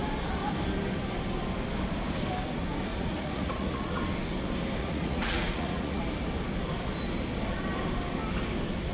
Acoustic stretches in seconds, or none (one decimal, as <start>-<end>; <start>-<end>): 0.0-2.9; 4.0-4.8; 6.0-8.9